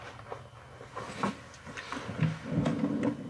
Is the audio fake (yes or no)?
no